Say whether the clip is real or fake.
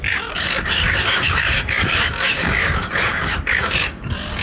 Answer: fake